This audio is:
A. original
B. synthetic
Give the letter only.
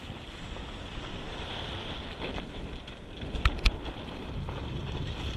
A